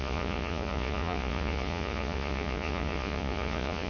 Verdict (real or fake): fake